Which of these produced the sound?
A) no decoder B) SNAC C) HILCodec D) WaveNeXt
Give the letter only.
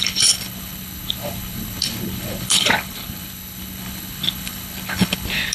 C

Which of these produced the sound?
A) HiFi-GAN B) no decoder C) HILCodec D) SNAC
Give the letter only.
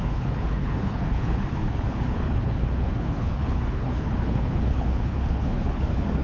C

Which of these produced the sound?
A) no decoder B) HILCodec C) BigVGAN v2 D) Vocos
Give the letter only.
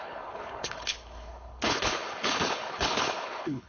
B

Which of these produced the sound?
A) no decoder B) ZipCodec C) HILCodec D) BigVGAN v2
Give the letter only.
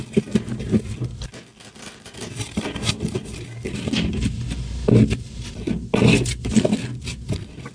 A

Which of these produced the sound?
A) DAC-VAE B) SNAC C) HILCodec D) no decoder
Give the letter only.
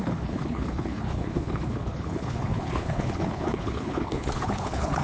C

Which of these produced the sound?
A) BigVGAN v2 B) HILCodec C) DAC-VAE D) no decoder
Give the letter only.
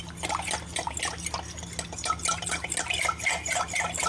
D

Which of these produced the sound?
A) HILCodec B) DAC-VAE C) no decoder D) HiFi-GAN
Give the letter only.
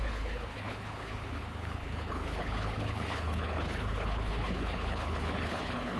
A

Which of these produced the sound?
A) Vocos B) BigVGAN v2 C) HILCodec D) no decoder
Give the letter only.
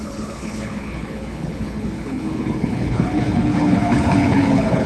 C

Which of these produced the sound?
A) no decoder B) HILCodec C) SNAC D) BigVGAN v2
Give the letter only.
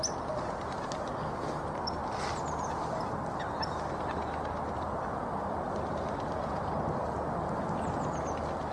A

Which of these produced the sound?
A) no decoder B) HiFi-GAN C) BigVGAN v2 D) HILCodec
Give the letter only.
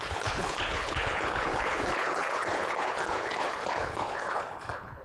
D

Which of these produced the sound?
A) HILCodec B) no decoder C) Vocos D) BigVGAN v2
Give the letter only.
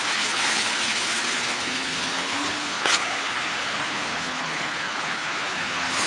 A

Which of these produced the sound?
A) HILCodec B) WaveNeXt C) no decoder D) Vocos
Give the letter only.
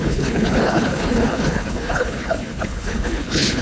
A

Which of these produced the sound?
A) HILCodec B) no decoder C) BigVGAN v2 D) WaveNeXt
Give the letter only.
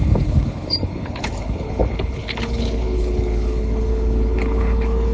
A